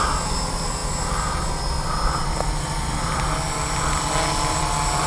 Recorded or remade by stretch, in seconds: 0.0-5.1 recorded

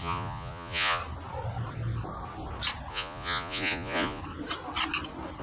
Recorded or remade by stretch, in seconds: 0.0-1.0 remade; 1.0-2.9 recorded; 2.9-4.2 remade; 4.2-5.4 recorded

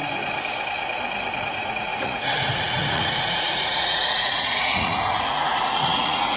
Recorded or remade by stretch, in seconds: 0.0-1.4 recorded; 1.4-6.4 remade